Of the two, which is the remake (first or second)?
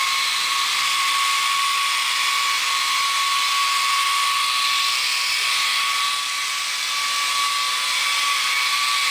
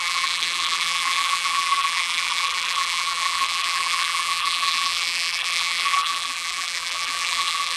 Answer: second